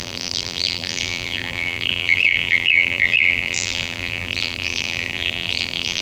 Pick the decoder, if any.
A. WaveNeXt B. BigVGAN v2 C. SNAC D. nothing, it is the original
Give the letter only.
B